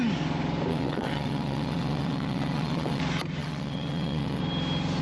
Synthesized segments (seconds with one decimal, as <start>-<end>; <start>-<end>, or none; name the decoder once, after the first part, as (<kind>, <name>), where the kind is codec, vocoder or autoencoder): 0.7-3.0 (vocoder, WaveNeXt); 3.4-4.4